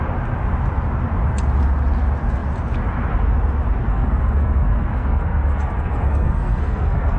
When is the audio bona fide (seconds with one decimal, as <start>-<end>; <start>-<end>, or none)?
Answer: 0.0-3.9